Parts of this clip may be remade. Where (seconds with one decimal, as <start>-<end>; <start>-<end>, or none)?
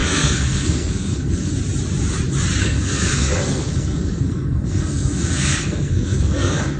0.0-1.5; 2.6-6.8